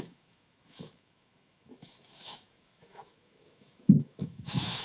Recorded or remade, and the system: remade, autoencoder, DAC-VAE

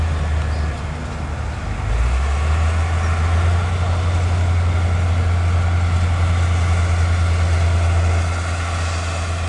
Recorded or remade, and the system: recorded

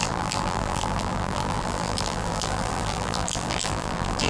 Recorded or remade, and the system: remade, vocoder, BigVGAN v2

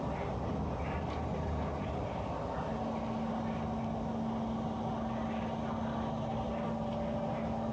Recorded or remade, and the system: recorded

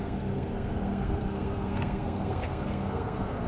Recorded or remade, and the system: remade, codec, SNAC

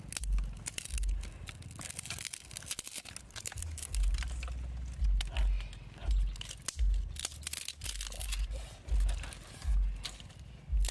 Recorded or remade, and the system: recorded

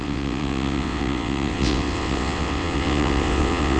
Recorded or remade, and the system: remade, vocoder, WaveNeXt